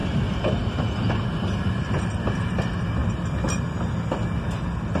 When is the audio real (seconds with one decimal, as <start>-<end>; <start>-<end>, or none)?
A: 0.0-5.0

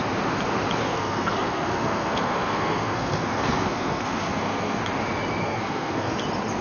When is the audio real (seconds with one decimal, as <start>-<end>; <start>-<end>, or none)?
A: 0.0-0.8; 4.8-5.4; 6.1-6.6

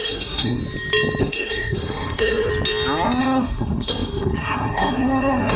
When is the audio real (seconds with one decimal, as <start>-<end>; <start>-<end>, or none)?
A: 0.6-1.2; 2.5-3.2

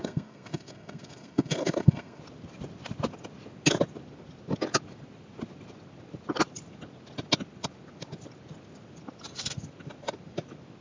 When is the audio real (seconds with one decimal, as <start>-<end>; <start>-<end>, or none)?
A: 2.2-10.8

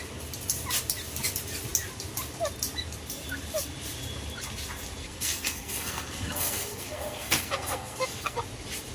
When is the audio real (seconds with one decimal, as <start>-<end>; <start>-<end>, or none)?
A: 0.0-5.0; 8.4-8.9

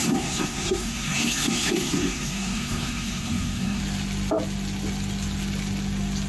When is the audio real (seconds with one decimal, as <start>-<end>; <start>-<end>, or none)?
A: 3.8-6.3

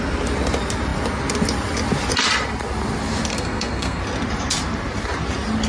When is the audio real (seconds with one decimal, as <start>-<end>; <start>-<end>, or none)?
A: 0.0-3.3; 4.0-5.7

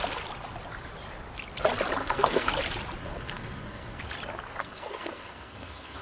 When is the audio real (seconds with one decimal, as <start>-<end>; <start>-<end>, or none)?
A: 0.0-2.0; 2.5-3.0; 4.0-4.6